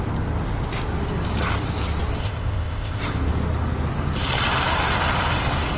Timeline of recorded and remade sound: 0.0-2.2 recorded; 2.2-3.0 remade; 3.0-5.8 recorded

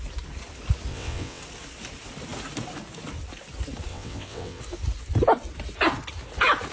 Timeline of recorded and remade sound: 0.0-0.9 recorded; 0.9-1.4 remade; 1.4-3.9 recorded; 3.9-4.6 remade; 4.6-6.7 recorded

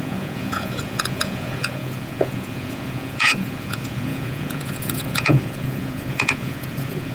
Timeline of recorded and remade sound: 0.0-7.1 remade

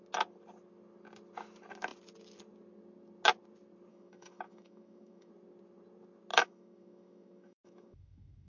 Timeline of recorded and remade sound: 0.0-3.9 recorded; 3.9-5.3 remade; 5.3-6.3 recorded; 6.3-8.5 remade

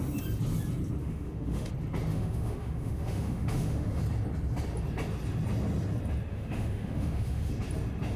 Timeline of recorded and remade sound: 0.0-1.0 recorded; 1.0-1.7 remade; 1.7-2.1 recorded; 2.1-4.0 remade; 4.0-6.3 recorded; 6.3-7.5 remade; 7.5-8.2 recorded

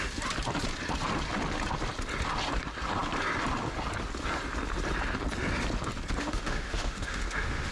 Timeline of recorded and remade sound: 0.0-6.2 recorded; 6.2-7.7 remade